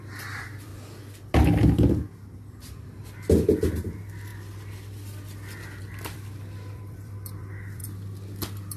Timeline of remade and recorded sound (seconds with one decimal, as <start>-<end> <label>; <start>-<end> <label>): 0.0-0.7 remade; 0.7-3.6 recorded; 3.6-4.3 remade; 4.3-5.8 recorded; 5.8-7.8 remade; 7.8-8.8 recorded